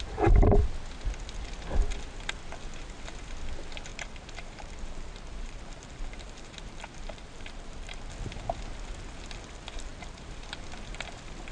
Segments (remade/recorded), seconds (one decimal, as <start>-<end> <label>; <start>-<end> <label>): 0.0-3.9 recorded; 3.9-8.1 remade; 8.1-9.9 recorded; 9.9-10.5 remade; 10.5-11.5 recorded